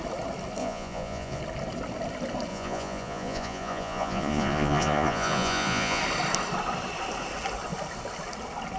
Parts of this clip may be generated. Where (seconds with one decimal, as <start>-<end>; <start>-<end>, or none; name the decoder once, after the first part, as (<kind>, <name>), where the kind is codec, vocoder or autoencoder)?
0.6-1.4 (vocoder, Vocos); 2.5-6.0

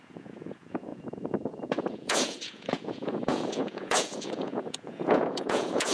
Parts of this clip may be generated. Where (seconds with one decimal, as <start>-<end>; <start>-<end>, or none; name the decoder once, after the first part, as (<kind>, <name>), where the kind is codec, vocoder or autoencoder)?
0.0-5.9 (vocoder, Vocos)

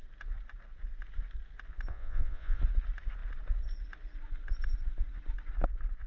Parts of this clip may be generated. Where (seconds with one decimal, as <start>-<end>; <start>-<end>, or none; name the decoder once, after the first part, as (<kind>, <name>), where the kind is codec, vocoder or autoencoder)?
1.9-2.6 (vocoder, Vocos)

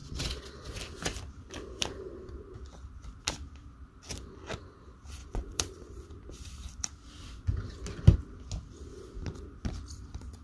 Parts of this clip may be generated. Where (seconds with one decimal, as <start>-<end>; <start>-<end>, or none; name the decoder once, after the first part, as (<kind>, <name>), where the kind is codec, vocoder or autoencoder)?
0.0-0.8 (vocoder, Vocos); 5.2-5.9

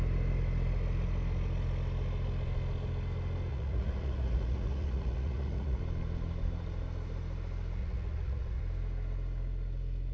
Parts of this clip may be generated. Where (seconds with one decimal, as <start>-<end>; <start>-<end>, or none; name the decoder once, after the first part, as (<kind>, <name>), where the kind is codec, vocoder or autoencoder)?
3.5-5.8 (vocoder, Vocos); 7.8-8.6

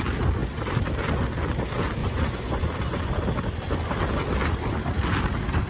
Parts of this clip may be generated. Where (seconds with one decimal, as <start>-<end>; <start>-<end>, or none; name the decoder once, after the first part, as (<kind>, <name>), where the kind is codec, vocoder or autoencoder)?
2.0-3.1 (vocoder, Vocos)

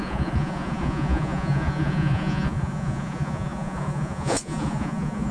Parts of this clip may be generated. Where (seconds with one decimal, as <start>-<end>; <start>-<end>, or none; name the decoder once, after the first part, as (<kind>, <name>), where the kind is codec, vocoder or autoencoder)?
0.0-5.3 (vocoder, Vocos)

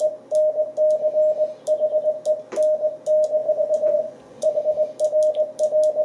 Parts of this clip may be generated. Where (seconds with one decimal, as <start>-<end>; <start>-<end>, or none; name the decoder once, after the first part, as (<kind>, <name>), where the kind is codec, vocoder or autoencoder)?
3.4-4.6 (vocoder, Vocos)